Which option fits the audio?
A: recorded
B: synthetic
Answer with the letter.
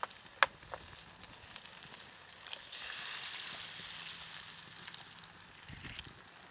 A